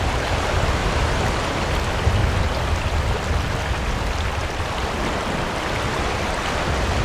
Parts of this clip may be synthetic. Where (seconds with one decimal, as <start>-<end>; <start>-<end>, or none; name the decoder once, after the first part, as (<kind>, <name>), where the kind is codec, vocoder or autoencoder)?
0.8-1.3 (vocoder, BigVGAN v2); 2.2-5.9

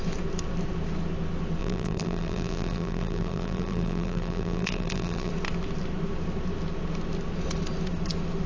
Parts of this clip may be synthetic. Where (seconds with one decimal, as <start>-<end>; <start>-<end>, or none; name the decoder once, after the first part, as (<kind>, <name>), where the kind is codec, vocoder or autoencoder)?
1.6-5.3 (vocoder, BigVGAN v2)

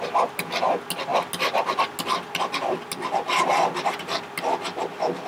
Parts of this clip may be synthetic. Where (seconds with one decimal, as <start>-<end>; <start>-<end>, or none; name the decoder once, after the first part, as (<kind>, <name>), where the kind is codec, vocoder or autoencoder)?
none

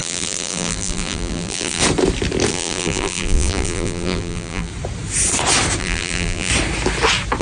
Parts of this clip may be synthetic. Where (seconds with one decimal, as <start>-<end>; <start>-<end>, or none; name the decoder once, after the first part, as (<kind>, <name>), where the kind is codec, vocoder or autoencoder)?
0.0-1.8 (vocoder, BigVGAN v2); 2.5-4.7; 5.8-6.5

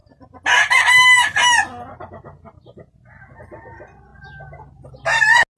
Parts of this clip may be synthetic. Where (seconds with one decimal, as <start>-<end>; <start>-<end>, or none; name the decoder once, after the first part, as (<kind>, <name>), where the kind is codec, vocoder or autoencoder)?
none

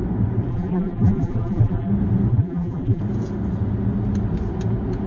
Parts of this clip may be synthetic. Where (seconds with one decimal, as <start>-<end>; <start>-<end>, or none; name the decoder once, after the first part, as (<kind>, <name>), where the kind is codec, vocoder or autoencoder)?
0.5-1.9 (vocoder, BigVGAN v2); 2.3-3.0

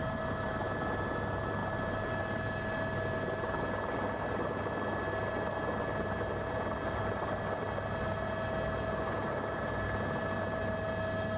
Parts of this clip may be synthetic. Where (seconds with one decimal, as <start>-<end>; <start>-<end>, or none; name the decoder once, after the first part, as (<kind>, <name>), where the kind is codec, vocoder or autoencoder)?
none

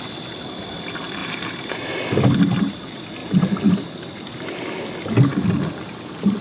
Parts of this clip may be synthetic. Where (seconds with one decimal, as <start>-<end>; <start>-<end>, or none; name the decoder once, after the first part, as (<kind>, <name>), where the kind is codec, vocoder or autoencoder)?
1.2-1.8 (vocoder, BigVGAN v2)